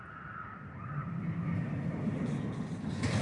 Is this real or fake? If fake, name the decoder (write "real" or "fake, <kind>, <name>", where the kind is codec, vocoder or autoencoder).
real